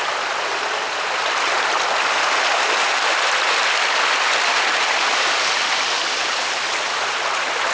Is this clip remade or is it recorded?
recorded